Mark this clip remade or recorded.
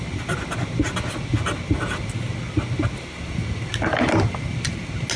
recorded